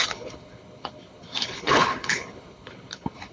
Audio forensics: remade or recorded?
remade